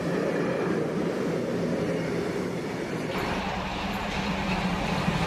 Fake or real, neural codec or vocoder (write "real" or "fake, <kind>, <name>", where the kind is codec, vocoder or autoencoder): real